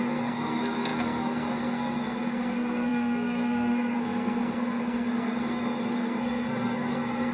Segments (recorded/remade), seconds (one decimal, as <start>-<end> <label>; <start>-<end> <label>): 0.0-7.3 remade